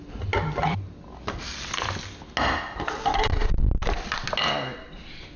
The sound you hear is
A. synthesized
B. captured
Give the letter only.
B